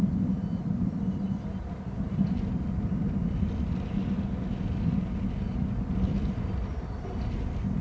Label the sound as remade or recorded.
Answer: recorded